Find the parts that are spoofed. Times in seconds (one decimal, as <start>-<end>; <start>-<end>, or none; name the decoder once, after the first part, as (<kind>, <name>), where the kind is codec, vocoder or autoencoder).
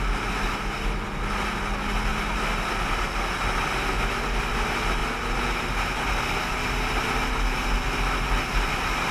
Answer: none